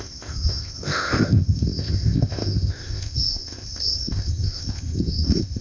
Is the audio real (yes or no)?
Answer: no